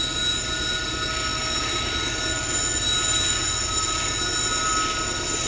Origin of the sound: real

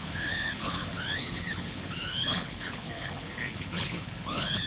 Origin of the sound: fake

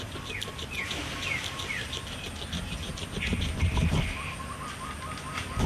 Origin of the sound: real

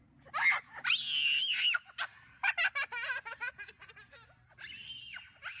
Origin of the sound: real